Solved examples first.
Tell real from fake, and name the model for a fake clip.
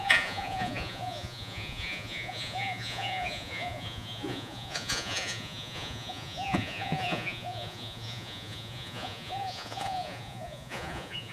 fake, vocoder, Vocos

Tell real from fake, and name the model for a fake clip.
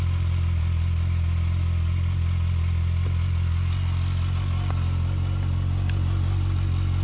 real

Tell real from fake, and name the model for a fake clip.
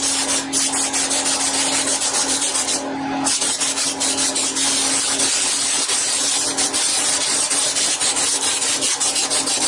real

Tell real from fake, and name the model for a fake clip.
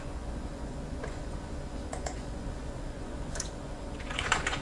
fake, vocoder, Vocos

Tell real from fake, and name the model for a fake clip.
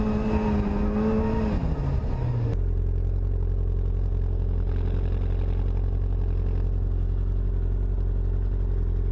real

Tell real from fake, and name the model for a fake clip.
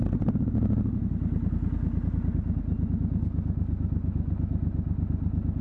real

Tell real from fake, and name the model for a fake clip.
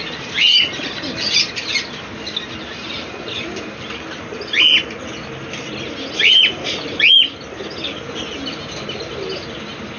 real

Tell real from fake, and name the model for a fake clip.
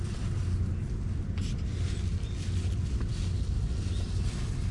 real